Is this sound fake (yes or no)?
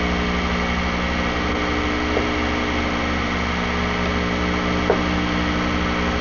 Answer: no